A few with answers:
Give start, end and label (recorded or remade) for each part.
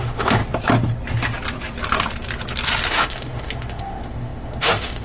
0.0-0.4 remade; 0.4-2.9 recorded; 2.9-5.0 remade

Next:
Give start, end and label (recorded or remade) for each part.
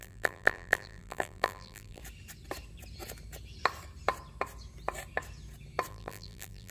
0.0-2.0 remade; 2.0-5.9 recorded; 5.9-6.7 remade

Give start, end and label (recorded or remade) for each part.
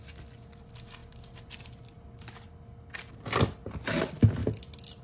0.0-5.0 recorded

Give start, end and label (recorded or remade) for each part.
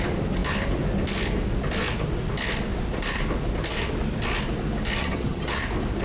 0.0-5.0 recorded; 5.0-5.6 remade; 5.6-6.0 recorded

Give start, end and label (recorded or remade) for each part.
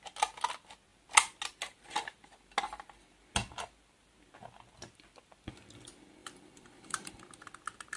0.0-6.2 recorded; 6.2-7.1 remade; 7.1-8.0 recorded